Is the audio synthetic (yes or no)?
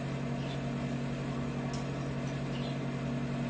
no